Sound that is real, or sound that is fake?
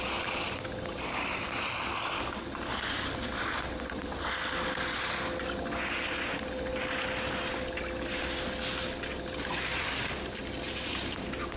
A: real